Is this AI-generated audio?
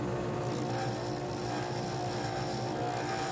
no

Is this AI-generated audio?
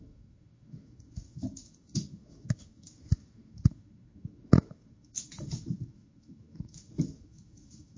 yes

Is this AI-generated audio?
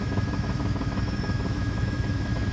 yes